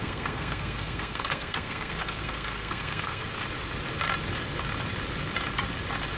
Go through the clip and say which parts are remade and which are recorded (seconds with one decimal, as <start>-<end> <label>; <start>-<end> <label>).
0.0-3.3 remade; 3.3-6.2 recorded